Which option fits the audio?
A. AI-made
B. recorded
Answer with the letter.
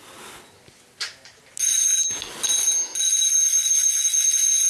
B